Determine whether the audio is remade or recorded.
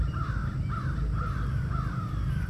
recorded